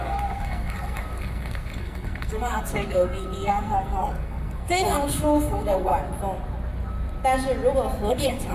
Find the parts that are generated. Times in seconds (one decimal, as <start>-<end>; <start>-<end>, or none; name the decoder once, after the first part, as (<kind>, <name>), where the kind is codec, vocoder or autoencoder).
0.0-5.9 (codec, SNAC); 8.1-8.5